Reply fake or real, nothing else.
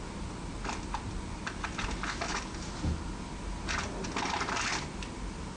real